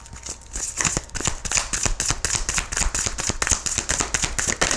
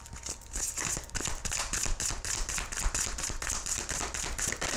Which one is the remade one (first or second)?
second